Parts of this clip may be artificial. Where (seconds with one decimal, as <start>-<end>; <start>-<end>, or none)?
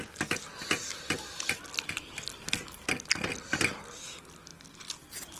none